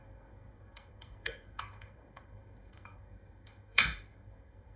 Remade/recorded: remade